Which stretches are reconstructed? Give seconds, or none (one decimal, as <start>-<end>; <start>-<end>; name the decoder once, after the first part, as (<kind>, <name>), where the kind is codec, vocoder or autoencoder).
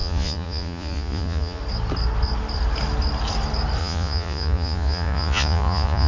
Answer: 0.0-1.6 (vocoder, Vocos); 3.8-6.1